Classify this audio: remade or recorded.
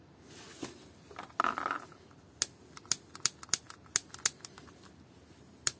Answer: recorded